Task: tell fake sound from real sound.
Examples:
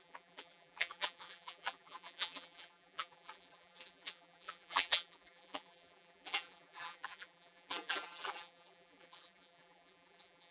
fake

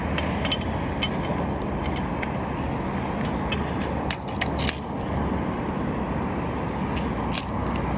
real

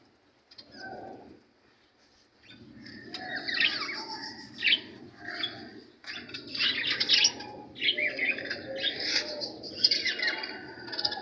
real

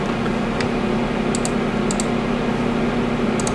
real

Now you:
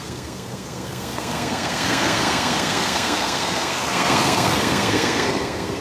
fake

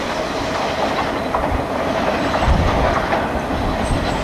real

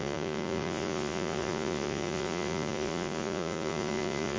fake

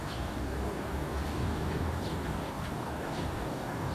fake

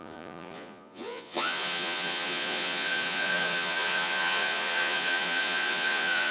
fake